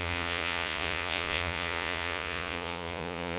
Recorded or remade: remade